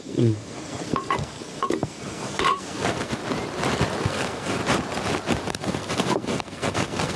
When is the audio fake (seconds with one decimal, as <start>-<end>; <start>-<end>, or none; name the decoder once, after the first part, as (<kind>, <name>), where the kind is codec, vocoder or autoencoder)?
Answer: 0.0-3.2 (codec, SNAC); 4.0-4.6; 5.5-7.2